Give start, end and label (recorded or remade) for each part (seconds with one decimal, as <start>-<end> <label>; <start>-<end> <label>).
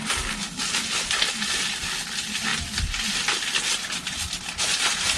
0.0-5.2 recorded